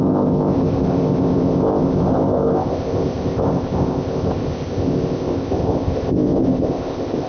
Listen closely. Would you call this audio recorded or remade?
remade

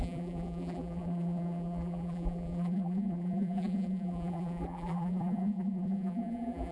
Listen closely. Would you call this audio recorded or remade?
remade